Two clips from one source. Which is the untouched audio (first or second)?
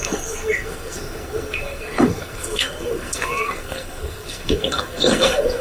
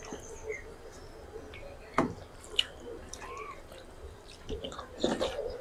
second